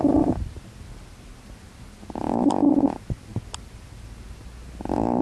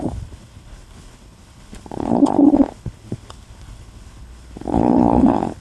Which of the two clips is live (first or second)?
first